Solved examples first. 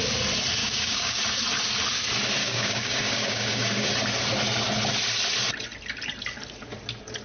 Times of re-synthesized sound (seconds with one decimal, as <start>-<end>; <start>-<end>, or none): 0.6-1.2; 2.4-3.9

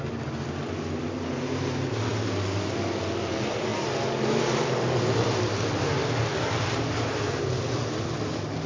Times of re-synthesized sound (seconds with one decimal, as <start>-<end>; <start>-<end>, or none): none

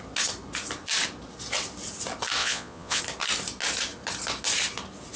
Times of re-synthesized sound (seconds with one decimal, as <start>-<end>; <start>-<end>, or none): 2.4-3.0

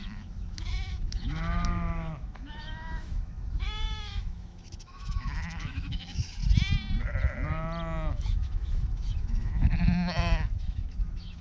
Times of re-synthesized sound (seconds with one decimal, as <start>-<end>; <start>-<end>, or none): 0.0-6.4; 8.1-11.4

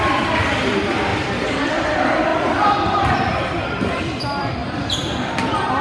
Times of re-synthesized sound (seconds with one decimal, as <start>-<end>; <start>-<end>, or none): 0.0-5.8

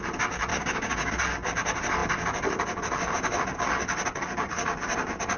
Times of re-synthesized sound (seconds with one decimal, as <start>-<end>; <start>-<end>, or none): 0.5-1.1

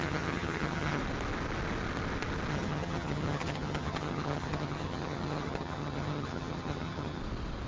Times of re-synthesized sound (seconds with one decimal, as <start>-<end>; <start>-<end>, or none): 0.0-1.0; 2.5-7.2

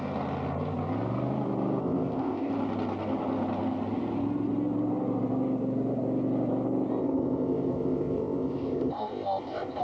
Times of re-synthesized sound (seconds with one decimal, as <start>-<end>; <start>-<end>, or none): 1.8-2.5; 7.0-9.8